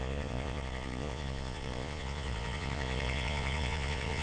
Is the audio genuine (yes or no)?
no